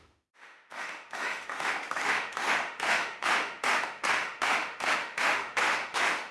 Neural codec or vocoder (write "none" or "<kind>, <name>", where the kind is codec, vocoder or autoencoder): autoencoder, DAC-VAE